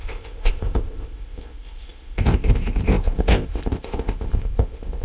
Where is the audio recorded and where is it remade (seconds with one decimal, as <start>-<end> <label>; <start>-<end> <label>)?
0.0-5.0 remade